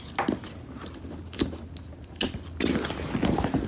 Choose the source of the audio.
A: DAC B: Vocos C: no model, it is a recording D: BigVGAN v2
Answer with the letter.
C